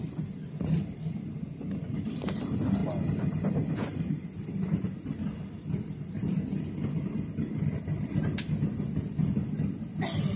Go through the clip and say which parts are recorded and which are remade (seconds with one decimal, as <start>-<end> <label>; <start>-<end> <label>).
0.0-10.4 recorded